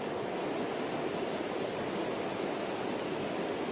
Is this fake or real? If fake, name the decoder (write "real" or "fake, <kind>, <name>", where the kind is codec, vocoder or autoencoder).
real